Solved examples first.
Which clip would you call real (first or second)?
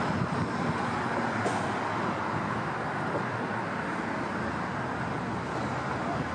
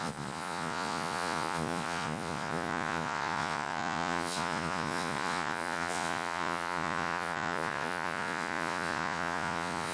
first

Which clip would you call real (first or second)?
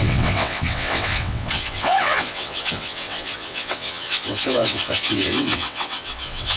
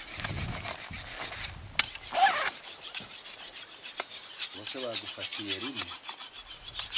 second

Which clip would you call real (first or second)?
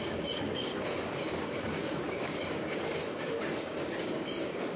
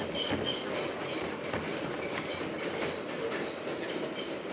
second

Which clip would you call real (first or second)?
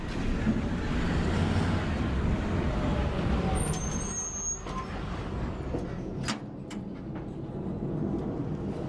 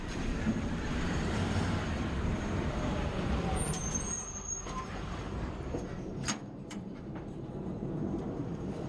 first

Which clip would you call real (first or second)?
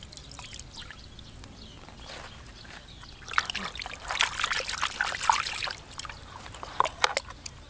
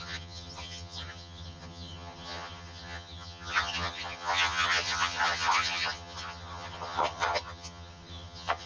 first